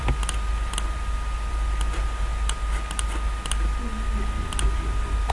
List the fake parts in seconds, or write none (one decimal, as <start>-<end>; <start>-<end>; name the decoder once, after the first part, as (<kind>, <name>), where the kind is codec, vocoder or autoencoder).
none